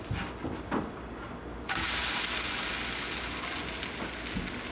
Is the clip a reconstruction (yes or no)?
no